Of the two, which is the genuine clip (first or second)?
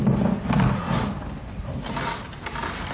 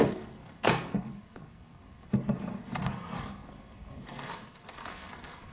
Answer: first